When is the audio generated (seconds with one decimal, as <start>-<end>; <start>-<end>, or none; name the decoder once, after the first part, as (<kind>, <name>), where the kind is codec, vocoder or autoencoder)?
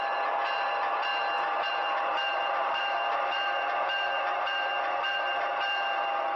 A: 0.0-1.1 (vocoder, BigVGAN v2); 1.7-6.4